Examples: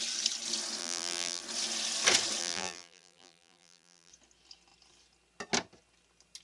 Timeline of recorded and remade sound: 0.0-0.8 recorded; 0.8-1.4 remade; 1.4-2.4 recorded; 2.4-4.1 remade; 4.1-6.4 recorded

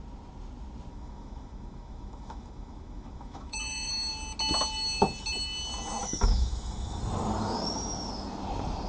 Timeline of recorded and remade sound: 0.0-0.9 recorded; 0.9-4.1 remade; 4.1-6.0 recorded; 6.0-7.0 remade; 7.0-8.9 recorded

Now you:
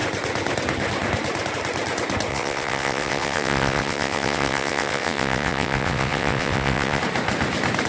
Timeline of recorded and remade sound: 0.0-2.3 recorded; 2.3-7.0 remade; 7.0-7.9 recorded

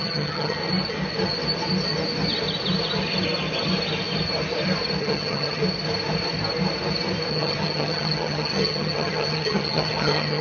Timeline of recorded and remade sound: 0.0-0.6 remade; 0.6-5.0 recorded; 5.0-5.6 remade; 5.6-7.3 recorded; 7.3-10.4 remade

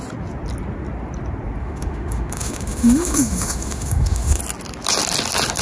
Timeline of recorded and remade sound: 0.0-1.6 recorded; 1.6-4.4 remade; 4.4-5.6 recorded

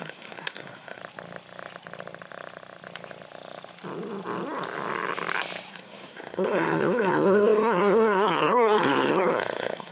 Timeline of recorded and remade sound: 0.0-1.0 remade; 1.0-5.7 recorded; 5.7-9.9 remade

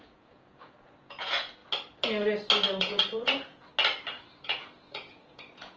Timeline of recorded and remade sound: 0.0-1.6 remade; 1.6-2.8 recorded; 2.8-3.7 remade; 3.7-4.4 recorded; 4.4-5.8 remade